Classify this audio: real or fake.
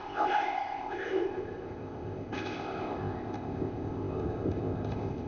fake